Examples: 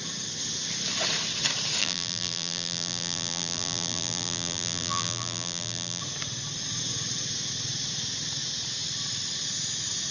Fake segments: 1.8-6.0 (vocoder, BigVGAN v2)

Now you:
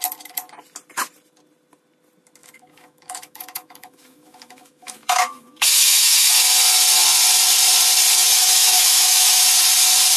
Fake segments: 2.4-6.4 (autoencoder, DAC-VAE); 8.3-9.4